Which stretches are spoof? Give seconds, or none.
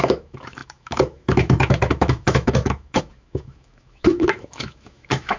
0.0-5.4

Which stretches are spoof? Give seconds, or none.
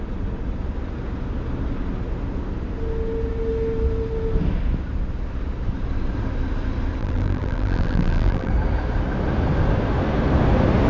7.0-8.5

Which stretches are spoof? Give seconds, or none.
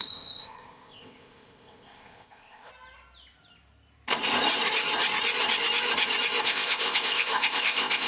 0.0-2.7; 6.4-8.1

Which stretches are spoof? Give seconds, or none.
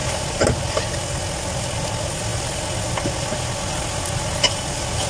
none